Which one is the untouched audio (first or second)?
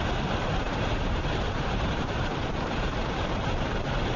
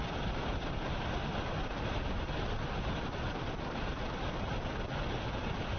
second